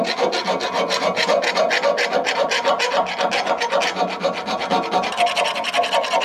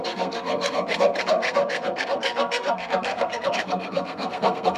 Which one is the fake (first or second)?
second